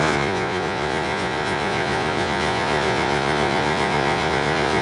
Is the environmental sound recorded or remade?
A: remade